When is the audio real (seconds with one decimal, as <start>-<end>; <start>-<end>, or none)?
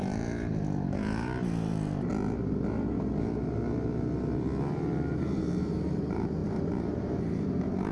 2.1-5.1